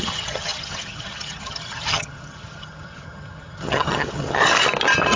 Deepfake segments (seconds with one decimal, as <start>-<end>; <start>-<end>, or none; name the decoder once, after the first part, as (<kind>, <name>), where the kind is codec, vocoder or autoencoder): 0.0-4.4 (vocoder, HiFi-GAN)